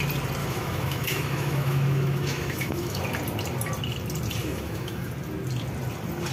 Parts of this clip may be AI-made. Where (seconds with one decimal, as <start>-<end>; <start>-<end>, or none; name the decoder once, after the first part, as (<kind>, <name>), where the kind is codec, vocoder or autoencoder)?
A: 0.4-3.0 (autoencoder, DAC-VAE); 4.4-5.1

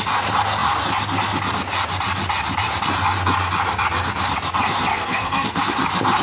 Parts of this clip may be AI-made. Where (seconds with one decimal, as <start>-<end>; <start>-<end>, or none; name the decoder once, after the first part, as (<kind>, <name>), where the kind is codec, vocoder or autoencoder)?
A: 4.9-5.6 (codec, SNAC)

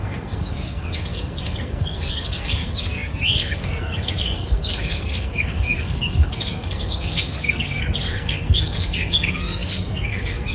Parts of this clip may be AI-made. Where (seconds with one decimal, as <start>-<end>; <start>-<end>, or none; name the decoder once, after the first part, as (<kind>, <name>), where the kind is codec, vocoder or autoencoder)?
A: 0.0-10.5 (codec, SNAC)

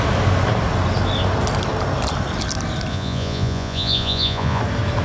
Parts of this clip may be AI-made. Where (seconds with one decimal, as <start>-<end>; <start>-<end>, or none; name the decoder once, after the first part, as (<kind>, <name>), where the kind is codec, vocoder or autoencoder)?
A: 2.9-4.6 (vocoder, Vocos)

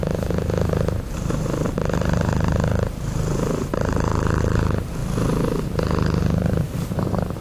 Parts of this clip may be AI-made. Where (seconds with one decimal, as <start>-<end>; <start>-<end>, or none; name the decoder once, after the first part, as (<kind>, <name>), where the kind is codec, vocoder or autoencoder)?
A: 0.0-7.4 (vocoder, BigVGAN v2)

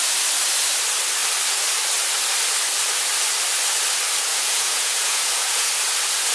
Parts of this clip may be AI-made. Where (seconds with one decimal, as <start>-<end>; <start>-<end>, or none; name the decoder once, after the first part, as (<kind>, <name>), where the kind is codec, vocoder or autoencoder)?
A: 4.3-5.7 (vocoder, Vocos)

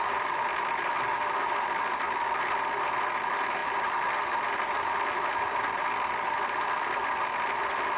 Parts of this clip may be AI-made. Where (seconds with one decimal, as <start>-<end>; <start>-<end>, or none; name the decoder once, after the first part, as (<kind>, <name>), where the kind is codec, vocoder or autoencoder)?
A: none

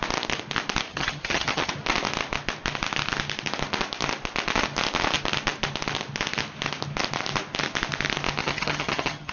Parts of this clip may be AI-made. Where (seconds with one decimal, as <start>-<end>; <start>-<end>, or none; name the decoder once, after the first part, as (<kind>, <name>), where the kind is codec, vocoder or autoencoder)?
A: 0.9-1.7 (vocoder, HiFi-GAN); 8.4-9.3